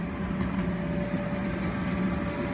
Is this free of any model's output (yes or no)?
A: yes